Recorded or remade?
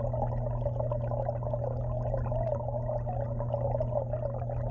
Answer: recorded